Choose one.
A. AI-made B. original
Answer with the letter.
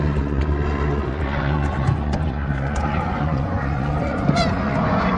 A